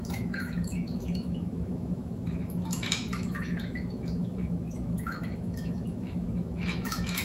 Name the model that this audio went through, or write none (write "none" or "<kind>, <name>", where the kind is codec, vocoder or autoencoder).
autoencoder, DAC-VAE